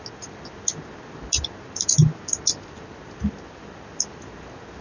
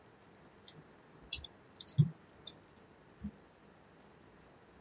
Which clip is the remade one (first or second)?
second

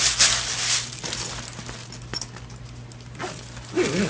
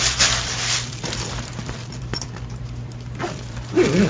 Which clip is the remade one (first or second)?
second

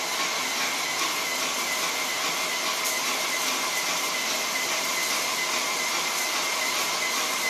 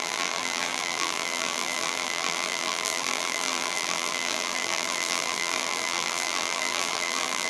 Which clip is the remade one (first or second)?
second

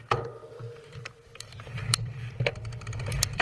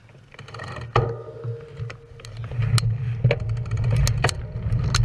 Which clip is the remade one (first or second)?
first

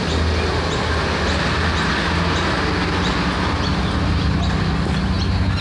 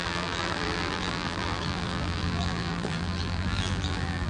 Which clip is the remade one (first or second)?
second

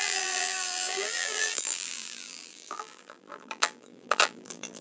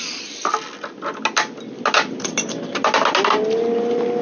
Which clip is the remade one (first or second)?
first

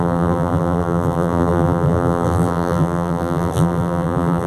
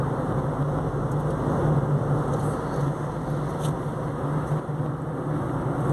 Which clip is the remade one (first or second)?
first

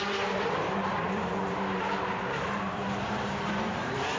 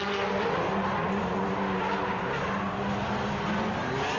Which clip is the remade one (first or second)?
first